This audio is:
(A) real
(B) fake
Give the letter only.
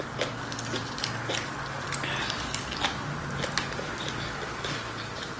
A